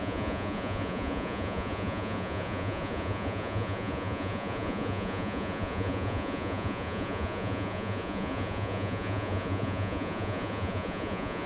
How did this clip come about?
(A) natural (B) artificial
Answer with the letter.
B